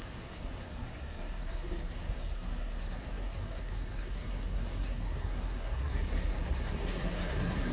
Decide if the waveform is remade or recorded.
remade